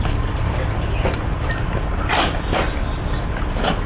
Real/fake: real